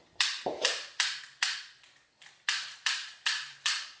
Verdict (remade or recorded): recorded